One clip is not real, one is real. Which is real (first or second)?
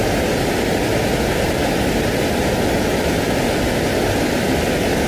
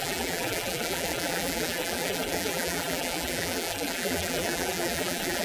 first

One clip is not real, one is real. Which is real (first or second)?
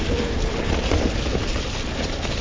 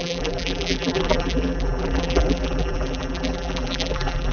first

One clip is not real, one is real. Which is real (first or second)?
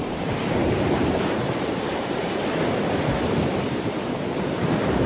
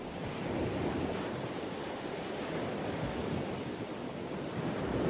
second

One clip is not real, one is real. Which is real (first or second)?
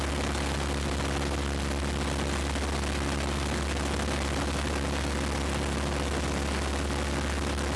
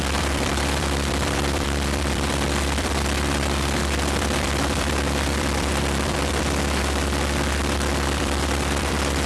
first